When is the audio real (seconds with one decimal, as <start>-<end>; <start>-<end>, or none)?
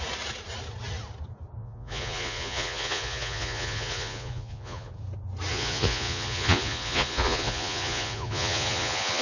0.0-1.6; 4.9-5.5